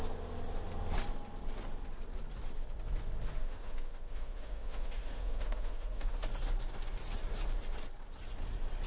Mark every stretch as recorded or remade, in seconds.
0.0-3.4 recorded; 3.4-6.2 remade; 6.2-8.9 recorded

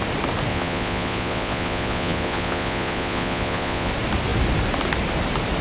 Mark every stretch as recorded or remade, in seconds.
0.0-0.5 recorded; 0.5-3.9 remade; 3.9-5.6 recorded

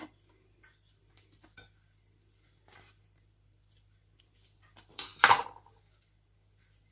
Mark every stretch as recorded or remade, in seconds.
0.0-6.9 remade

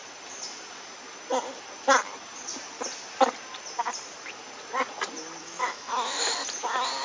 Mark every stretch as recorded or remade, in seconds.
0.0-5.4 recorded; 5.4-6.3 remade; 6.3-7.0 recorded

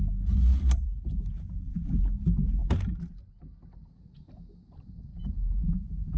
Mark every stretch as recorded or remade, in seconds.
0.0-0.5 recorded; 0.5-2.0 remade; 2.0-2.6 recorded; 2.6-3.4 remade; 3.4-5.1 recorded; 5.1-6.2 remade